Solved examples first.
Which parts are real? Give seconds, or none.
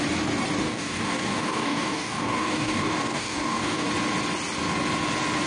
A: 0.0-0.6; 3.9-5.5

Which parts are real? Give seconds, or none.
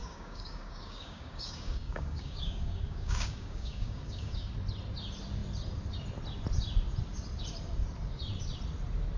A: 4.5-9.2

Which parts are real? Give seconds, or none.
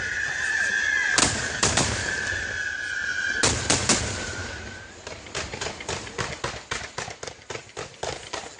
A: 0.0-1.2; 2.1-8.6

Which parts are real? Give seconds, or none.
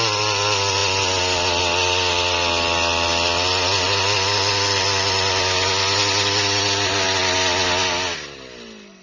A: 0.0-9.0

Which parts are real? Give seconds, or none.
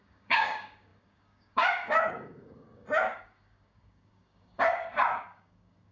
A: none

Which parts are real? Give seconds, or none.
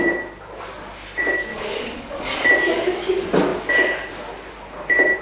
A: 0.0-1.5; 2.5-5.2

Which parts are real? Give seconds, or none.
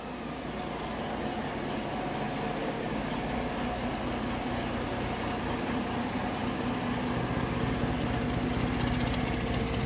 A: 0.0-2.6; 3.1-9.9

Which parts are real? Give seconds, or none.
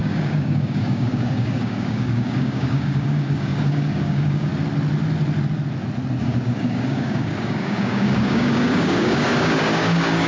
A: 4.5-6.2